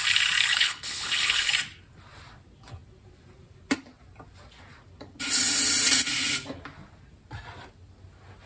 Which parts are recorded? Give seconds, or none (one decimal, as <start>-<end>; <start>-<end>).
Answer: 0.0-0.5; 1.5-8.5